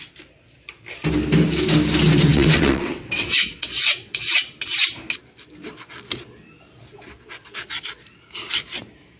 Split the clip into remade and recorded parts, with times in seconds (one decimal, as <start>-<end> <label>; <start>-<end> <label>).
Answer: 0.0-2.3 recorded; 2.3-4.3 remade; 4.3-9.2 recorded